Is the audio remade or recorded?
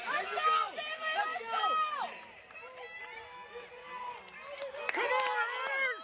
recorded